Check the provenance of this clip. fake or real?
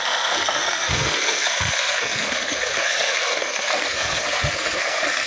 fake